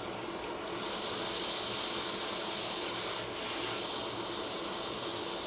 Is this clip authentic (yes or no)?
yes